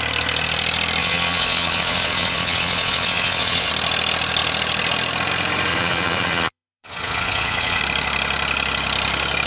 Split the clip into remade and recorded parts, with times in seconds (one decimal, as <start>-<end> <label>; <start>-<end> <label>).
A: 0.0-1.0 recorded; 1.0-3.7 remade; 3.7-5.7 recorded; 5.7-7.8 remade; 7.8-9.5 recorded